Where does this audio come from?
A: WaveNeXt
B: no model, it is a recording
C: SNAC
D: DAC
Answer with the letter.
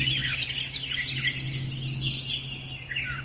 B